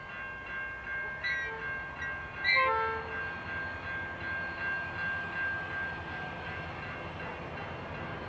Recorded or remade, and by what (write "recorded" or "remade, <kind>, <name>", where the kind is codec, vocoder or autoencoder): recorded